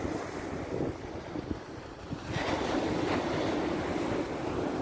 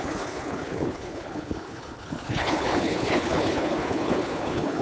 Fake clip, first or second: second